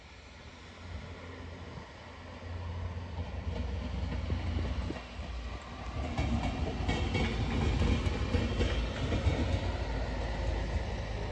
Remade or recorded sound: recorded